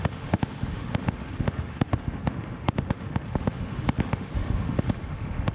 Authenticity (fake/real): fake